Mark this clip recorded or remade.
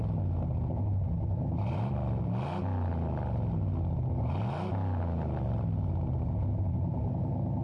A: recorded